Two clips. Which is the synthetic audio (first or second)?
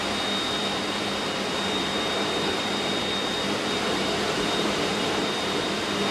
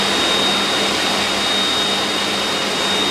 first